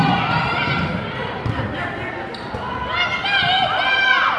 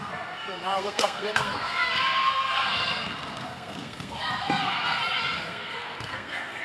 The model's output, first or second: second